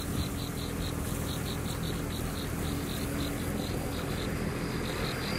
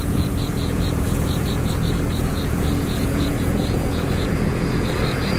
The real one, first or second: first